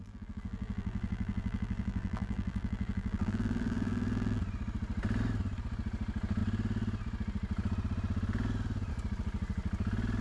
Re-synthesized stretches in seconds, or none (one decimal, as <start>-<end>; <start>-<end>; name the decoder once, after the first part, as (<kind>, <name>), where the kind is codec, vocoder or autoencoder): 0.0-4.4 (vocoder, BigVGAN v2)